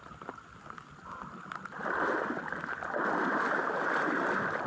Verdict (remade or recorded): recorded